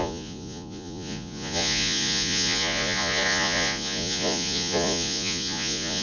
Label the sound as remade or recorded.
remade